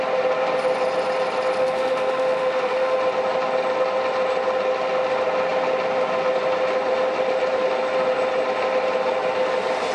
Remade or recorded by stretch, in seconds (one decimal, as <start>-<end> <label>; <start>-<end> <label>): 0.0-1.6 recorded; 1.6-3.0 remade; 3.0-9.9 recorded